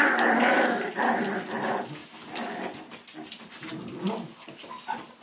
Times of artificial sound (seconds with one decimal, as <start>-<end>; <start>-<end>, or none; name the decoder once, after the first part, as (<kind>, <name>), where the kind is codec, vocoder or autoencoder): none